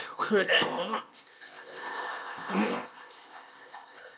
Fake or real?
fake